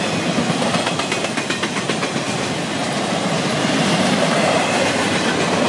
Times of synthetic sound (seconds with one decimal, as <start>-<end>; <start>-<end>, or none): 2.8-5.7